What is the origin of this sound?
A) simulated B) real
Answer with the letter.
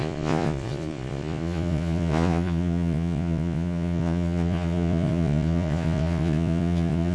A